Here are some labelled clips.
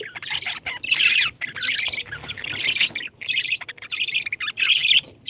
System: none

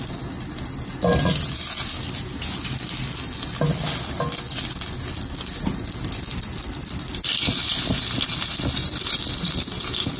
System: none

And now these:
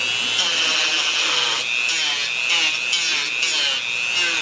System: none